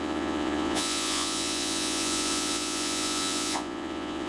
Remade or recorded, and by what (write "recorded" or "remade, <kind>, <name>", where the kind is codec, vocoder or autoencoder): remade, vocoder, Vocos